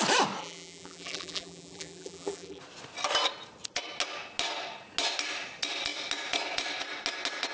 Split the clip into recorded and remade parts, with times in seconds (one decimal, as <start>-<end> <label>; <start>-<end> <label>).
0.0-0.4 recorded; 0.4-2.6 remade; 2.6-7.5 recorded